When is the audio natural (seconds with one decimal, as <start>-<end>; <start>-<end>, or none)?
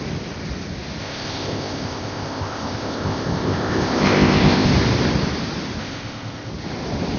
0.0-1.0; 4.7-5.8; 6.5-7.2